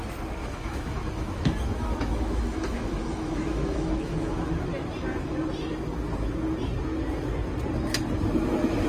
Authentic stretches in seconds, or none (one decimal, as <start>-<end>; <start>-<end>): 0.0-0.4; 4.5-8.9